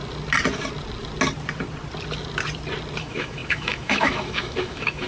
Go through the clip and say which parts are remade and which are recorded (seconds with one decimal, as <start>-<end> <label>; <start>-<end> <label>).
0.0-3.0 recorded; 3.0-5.1 remade